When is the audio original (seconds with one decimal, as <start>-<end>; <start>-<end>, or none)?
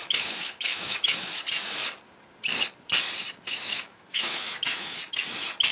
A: 1.4-3.5; 5.0-5.7